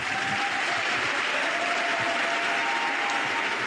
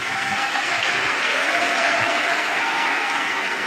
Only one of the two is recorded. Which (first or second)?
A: first